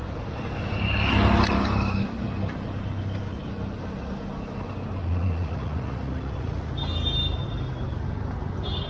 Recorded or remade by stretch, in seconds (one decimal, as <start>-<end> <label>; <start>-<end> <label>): 0.0-5.0 recorded; 5.0-6.7 remade; 6.7-8.9 recorded